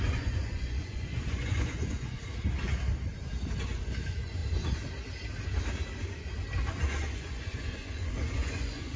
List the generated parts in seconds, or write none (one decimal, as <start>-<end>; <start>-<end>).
0.0-2.2; 3.6-4.4; 6.8-9.0